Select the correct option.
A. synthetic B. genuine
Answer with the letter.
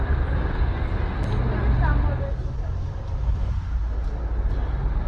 B